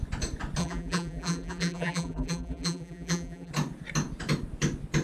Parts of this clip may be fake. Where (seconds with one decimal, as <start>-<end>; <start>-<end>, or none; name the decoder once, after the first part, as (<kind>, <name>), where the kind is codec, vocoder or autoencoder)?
0.6-3.5 (vocoder, BigVGAN v2)